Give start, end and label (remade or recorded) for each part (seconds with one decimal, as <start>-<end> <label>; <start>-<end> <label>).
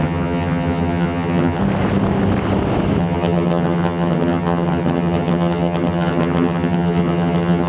0.0-1.6 remade; 1.6-3.0 recorded; 3.0-7.7 remade